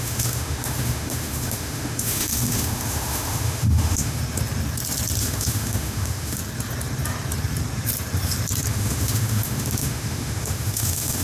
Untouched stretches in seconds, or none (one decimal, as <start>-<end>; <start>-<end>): 4.2-5.2; 6.4-8.7